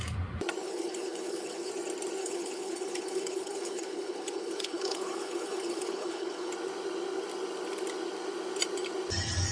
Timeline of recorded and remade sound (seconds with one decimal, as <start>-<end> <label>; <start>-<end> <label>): 0.0-0.6 recorded; 0.6-1.7 remade; 1.7-2.2 recorded; 2.2-6.5 remade; 6.5-9.5 recorded